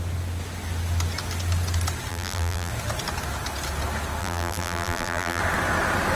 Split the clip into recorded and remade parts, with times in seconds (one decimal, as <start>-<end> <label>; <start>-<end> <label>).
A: 0.0-2.1 recorded; 2.1-2.7 remade; 2.7-4.2 recorded; 4.2-5.4 remade; 5.4-6.1 recorded